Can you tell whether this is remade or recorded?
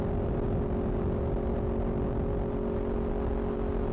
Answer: recorded